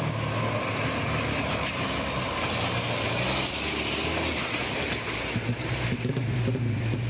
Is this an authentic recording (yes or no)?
yes